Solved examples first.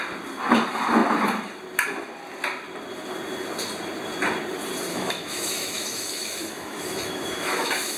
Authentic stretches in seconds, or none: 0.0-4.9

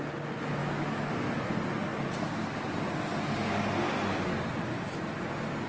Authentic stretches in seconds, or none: 0.0-0.6; 1.1-5.7